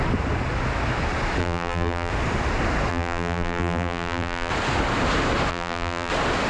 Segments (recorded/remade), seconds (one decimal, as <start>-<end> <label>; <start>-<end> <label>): 0.0-1.4 recorded; 1.4-2.1 remade; 2.1-2.9 recorded; 2.9-4.5 remade; 4.5-5.5 recorded; 5.5-6.1 remade; 6.1-6.5 recorded